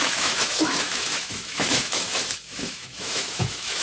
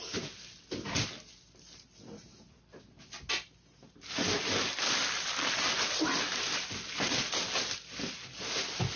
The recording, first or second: second